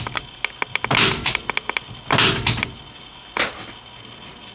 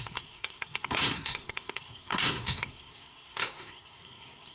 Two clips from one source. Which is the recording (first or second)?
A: first